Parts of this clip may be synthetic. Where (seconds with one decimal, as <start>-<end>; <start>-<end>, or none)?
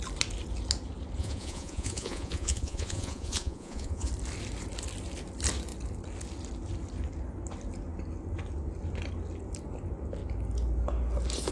1.2-4.1